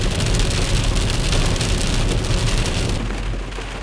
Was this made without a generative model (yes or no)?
yes